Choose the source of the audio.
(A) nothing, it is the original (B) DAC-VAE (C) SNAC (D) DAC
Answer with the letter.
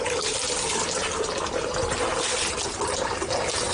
A